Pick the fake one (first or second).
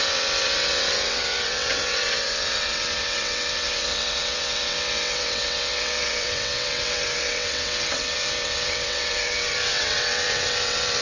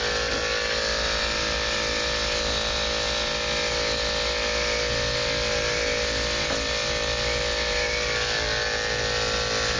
first